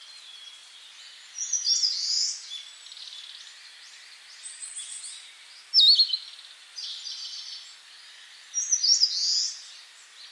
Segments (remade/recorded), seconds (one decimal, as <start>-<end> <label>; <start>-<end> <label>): 0.0-10.3 recorded